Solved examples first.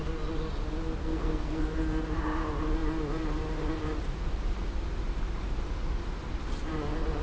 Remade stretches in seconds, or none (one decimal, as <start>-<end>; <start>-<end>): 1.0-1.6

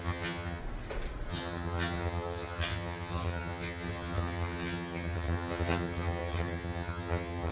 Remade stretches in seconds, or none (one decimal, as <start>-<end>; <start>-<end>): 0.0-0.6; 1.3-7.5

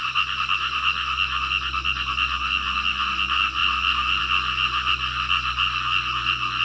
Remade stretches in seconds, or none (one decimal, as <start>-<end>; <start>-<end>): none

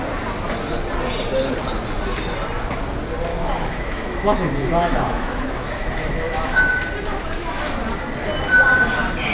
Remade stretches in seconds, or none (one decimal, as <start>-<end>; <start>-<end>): 3.3-6.7; 7.2-7.7